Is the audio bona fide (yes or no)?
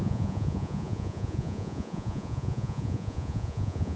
no